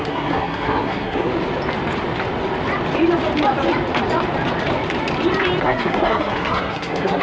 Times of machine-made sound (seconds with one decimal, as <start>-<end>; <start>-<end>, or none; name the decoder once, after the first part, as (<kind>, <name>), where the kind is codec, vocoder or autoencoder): 0.0-1.3 (codec, SNAC); 5.6-7.2

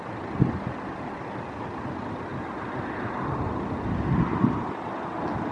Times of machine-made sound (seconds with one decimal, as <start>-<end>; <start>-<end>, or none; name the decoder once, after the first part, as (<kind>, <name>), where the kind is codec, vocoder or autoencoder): none